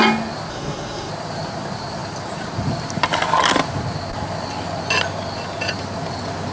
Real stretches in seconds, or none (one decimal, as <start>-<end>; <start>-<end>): 0.0-0.5; 1.1-6.5